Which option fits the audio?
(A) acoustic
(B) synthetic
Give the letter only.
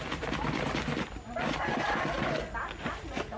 A